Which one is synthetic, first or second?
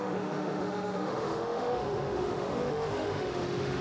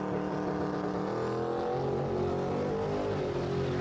first